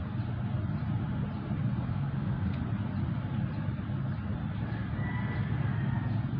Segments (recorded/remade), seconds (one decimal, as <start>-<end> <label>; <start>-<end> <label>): 0.0-1.9 recorded; 1.9-2.6 remade; 2.6-6.4 recorded